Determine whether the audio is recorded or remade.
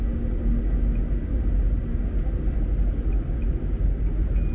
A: recorded